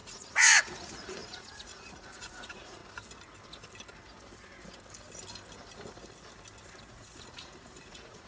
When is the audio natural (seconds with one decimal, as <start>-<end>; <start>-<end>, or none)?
2.8-6.9